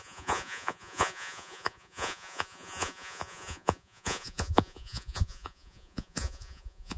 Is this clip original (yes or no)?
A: no